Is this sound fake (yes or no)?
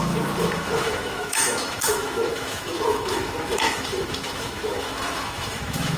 yes